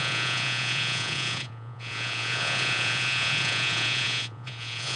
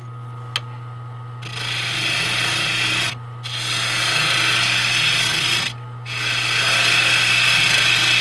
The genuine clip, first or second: second